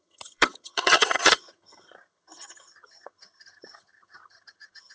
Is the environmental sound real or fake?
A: fake